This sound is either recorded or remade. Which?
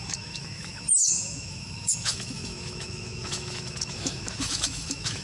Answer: remade